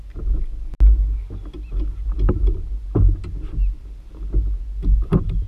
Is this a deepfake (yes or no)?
no